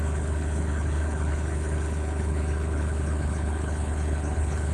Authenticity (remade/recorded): remade